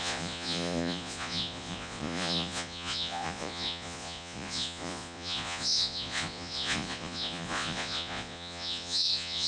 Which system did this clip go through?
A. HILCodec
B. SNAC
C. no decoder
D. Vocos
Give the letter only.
D